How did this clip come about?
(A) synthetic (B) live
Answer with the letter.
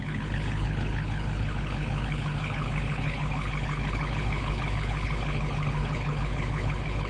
A